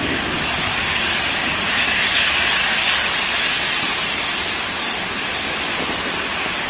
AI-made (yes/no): no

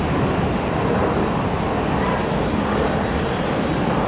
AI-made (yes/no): no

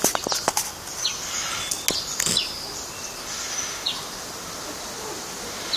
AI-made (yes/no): no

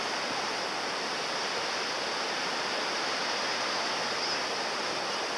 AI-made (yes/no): no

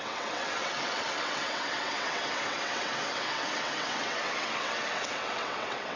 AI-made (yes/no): yes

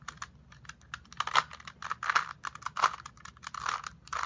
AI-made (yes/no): no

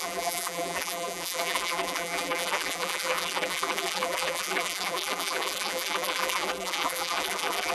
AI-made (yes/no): yes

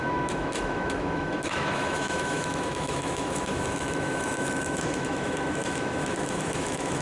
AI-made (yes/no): yes